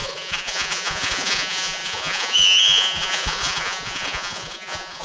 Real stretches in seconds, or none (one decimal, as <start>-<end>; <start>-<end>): none